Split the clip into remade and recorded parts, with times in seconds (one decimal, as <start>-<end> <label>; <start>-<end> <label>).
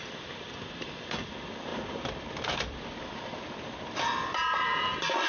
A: 0.0-5.3 remade